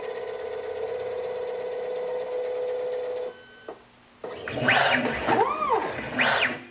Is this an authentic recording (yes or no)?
yes